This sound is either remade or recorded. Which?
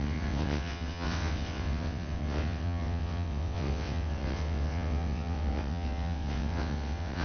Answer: remade